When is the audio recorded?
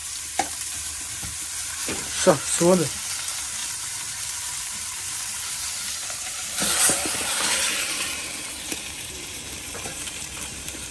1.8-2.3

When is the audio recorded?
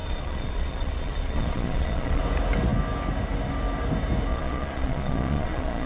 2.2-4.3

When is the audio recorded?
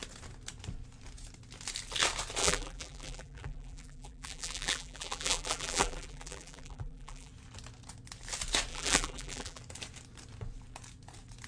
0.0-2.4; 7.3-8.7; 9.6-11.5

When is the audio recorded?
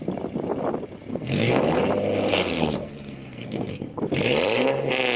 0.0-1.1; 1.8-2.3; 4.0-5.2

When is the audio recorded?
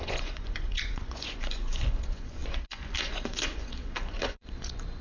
none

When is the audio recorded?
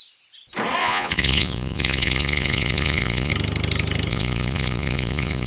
0.0-0.8; 3.3-4.1